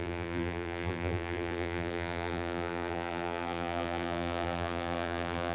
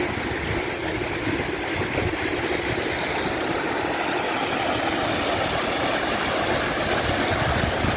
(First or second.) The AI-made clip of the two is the first